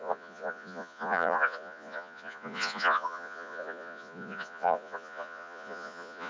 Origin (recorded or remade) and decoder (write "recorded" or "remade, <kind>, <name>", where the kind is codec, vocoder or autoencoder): remade, vocoder, Vocos